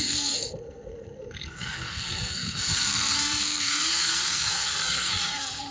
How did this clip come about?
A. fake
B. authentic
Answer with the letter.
A